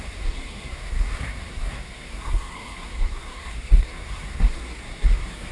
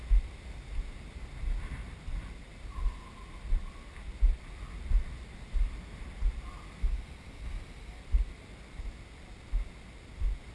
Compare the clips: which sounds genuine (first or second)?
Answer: second